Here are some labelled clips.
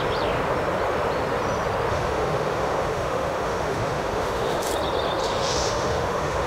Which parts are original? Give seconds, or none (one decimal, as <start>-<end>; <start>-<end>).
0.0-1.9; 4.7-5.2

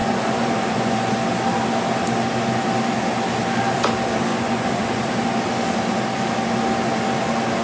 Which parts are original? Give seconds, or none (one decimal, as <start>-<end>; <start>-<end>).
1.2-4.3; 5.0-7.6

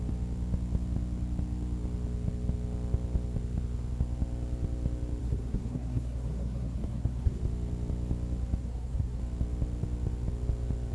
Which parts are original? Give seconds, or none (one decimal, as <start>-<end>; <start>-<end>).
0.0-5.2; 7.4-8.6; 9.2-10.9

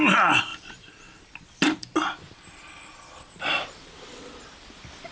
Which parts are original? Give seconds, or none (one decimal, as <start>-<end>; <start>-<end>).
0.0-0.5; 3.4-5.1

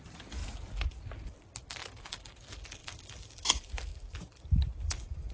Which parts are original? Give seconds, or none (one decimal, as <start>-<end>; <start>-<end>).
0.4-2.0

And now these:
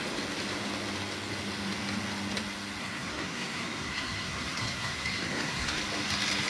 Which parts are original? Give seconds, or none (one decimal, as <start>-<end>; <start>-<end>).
0.0-2.8; 5.8-6.5